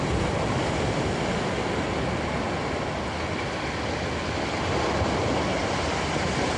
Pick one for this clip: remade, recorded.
recorded